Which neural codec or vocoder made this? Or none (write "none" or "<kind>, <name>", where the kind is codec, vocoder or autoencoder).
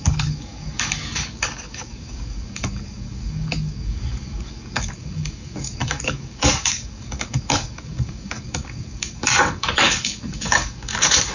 codec, DAC